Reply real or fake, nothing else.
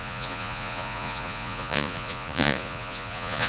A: fake